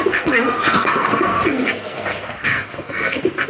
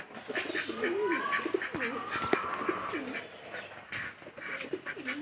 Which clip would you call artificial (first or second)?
first